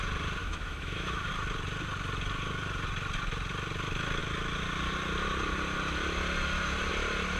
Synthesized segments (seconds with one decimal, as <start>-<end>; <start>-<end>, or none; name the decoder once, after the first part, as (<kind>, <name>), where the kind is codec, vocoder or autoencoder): 0.4-1.3 (autoencoder, DAC-VAE)